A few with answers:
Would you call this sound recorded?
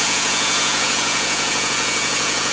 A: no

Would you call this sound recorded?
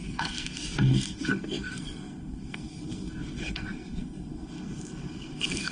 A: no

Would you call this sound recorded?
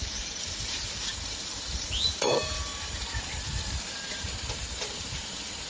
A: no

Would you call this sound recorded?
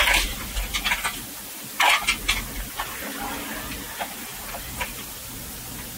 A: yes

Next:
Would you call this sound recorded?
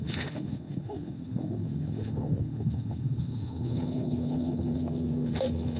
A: no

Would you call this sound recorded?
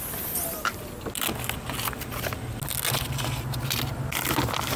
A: yes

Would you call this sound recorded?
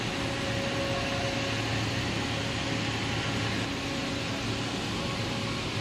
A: yes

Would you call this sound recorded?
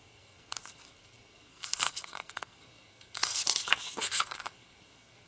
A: no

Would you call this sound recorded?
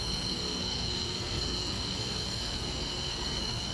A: no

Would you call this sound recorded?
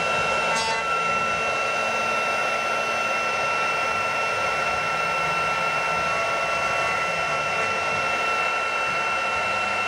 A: yes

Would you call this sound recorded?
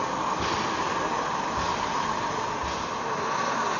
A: yes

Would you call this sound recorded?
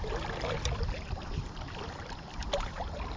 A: yes